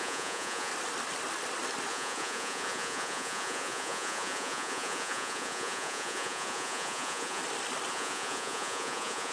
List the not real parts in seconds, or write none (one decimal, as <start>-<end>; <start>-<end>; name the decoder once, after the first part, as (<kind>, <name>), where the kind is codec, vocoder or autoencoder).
0.0-0.7 (vocoder, Vocos); 1.9-7.4; 7.9-9.3

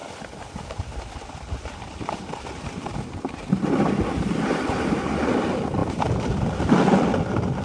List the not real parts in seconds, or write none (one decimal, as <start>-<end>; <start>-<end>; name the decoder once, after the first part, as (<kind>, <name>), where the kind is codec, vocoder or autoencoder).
none

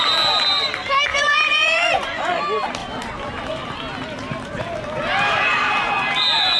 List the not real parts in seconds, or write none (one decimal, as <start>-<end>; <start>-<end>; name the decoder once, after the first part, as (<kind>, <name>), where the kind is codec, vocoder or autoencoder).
1.1-2.4 (vocoder, Vocos)

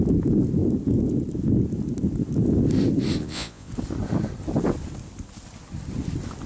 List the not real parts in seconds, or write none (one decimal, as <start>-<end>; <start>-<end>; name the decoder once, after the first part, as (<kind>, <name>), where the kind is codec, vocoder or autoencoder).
3.2-3.7 (vocoder, Vocos)

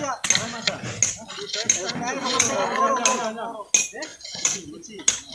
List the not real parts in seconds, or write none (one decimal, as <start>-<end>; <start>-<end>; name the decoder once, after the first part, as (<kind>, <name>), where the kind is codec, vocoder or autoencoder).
2.2-2.8 (vocoder, Vocos); 4.1-4.7

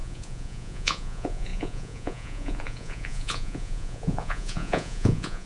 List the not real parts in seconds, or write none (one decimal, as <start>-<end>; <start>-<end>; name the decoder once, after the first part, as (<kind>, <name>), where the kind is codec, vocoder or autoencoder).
0.0-5.5 (vocoder, Vocos)